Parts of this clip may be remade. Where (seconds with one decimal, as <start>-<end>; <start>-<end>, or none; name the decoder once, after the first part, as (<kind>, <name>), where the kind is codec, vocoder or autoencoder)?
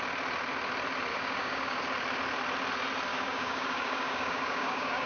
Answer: 1.1-1.8 (codec, DAC); 3.1-5.1